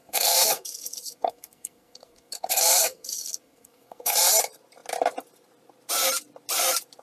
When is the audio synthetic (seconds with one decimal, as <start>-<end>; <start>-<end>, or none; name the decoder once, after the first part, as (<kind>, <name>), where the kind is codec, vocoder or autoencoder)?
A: 0.0-4.2 (codec, SNAC)